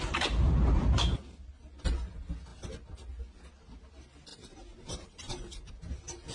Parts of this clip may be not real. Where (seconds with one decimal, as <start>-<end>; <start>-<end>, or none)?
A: 4.3-5.7